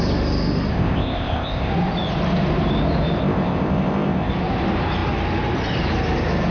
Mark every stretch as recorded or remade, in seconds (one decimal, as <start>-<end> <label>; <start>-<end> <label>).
0.0-0.7 recorded; 0.7-1.7 remade; 1.7-3.2 recorded; 3.2-4.3 remade; 4.3-6.5 recorded